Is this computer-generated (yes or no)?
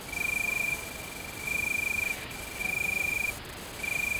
no